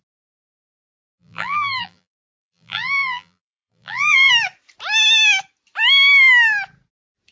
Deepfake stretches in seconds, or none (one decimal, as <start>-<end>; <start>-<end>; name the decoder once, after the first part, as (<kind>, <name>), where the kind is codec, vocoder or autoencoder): 0.6-4.3 (vocoder, BigVGAN v2)